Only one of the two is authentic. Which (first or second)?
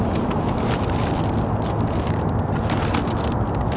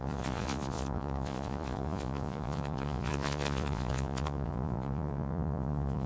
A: first